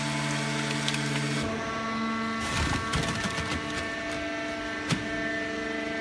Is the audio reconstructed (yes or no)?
no